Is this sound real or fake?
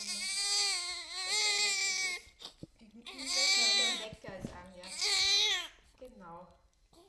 real